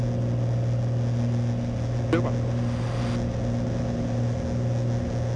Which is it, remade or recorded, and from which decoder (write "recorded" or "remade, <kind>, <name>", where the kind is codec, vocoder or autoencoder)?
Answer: recorded